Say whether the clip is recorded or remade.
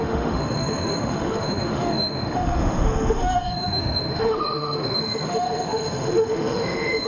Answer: remade